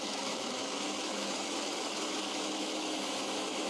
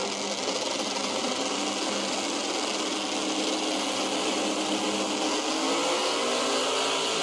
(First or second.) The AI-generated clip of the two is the first